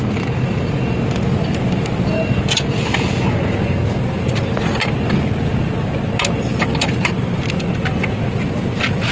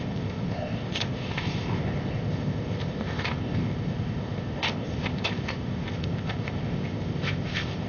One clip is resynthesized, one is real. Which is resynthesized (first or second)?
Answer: second